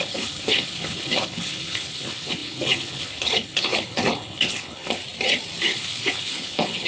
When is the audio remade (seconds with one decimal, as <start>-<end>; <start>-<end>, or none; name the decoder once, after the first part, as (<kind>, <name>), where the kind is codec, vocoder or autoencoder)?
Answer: 0.0-5.0 (codec, HILCodec); 5.6-6.9